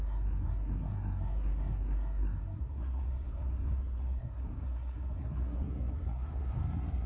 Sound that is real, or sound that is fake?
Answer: fake